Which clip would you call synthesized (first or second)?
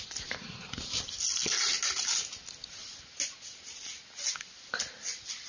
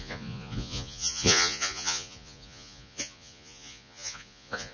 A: second